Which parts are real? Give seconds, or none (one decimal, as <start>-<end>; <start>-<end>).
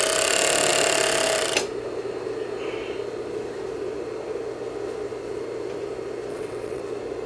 0.0-6.3; 6.8-7.3